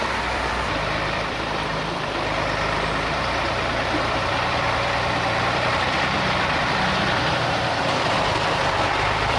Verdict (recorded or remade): remade